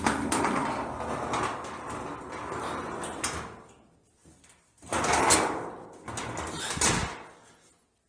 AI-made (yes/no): no